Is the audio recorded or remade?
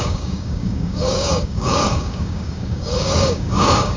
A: remade